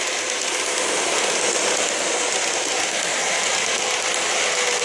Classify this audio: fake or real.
real